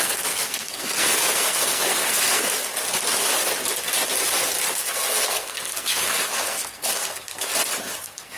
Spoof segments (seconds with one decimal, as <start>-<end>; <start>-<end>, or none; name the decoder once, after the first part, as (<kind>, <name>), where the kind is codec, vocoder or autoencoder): 0.0-2.7 (codec, SNAC); 4.7-7.5; 8.0-8.4

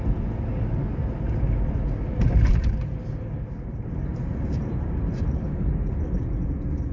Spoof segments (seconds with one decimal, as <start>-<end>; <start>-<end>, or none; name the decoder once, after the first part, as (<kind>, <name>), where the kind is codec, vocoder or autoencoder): 2.5-3.1 (vocoder, BigVGAN v2); 4.1-5.7

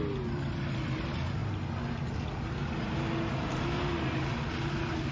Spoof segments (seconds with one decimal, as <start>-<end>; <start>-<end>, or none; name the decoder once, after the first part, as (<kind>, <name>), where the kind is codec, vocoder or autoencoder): none

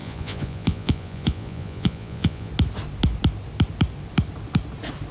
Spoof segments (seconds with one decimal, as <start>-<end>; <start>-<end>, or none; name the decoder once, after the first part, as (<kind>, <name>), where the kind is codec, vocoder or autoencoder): 0.0-2.5 (vocoder, Vocos)

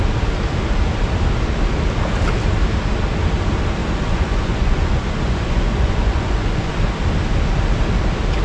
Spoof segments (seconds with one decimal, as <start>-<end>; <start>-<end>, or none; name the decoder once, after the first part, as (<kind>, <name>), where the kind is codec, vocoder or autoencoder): 3.8-6.7 (vocoder, Vocos)

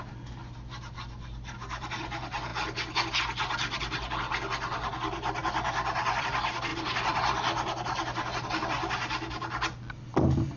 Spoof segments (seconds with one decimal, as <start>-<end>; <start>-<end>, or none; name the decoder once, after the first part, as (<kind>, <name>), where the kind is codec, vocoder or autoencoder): none